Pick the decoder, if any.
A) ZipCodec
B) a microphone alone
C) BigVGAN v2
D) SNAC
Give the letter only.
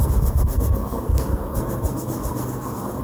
D